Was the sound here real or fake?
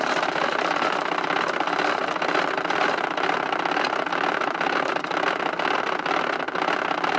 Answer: real